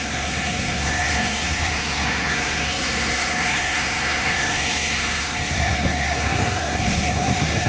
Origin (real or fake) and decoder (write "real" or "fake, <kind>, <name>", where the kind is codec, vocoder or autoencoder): fake, codec, SNAC